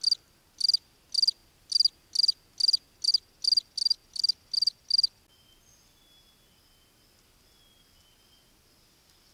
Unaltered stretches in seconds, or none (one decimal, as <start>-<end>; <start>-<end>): 0.0-9.3